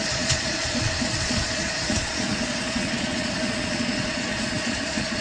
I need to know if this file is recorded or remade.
remade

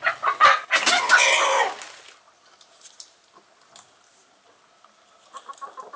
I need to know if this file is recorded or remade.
recorded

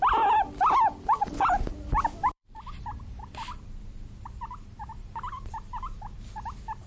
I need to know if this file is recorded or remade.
remade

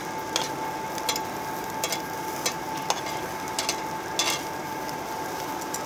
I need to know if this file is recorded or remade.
recorded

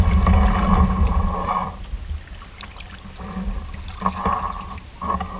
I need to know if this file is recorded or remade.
recorded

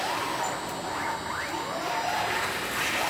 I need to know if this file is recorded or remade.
recorded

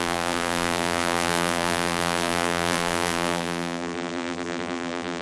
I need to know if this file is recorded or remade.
remade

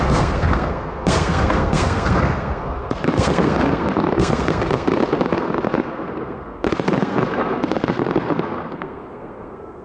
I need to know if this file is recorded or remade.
remade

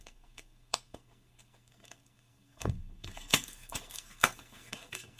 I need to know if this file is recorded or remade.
remade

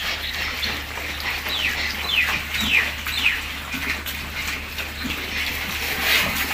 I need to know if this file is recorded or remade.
recorded